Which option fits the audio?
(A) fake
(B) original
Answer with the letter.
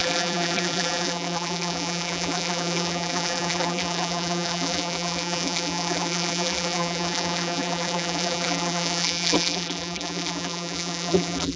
A